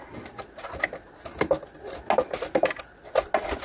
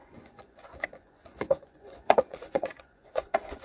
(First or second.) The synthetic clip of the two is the second